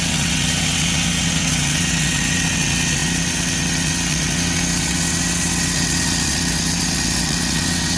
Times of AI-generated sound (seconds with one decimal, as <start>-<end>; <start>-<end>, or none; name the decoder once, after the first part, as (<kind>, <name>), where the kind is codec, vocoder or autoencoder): 0.0-8.0 (vocoder, WaveNeXt)